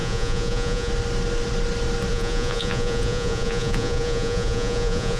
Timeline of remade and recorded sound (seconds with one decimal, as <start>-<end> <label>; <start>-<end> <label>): 0.0-0.9 remade; 0.9-2.1 recorded; 2.1-5.2 remade